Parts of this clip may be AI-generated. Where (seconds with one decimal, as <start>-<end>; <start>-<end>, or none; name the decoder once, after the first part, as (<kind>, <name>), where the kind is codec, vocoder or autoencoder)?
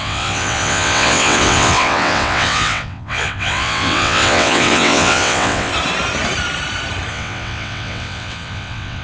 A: 0.0-5.7 (vocoder, WaveNeXt); 7.1-9.0